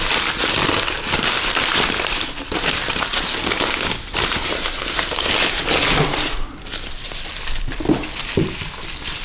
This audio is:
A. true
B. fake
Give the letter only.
A